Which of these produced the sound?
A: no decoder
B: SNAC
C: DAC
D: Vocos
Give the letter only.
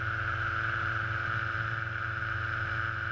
A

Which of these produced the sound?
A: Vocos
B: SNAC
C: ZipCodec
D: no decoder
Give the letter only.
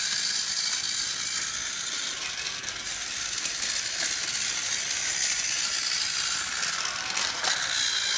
D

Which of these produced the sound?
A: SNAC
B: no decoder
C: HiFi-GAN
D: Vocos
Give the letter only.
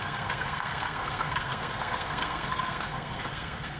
A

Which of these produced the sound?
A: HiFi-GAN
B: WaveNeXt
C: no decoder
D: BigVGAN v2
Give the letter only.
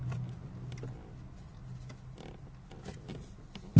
C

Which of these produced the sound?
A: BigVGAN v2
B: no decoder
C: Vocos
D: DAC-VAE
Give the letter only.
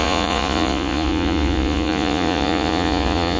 C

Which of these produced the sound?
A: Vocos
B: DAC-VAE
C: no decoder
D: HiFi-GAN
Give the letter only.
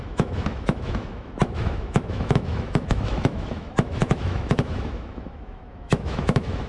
B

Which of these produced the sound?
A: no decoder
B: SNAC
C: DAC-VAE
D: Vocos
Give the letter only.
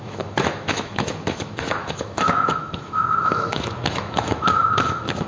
C